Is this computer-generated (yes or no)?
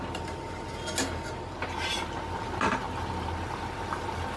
no